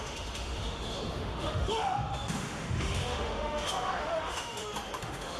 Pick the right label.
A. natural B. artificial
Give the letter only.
B